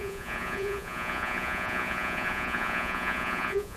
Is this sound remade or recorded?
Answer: remade